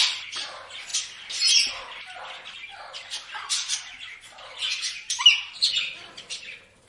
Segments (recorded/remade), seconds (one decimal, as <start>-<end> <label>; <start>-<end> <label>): 0.0-6.9 recorded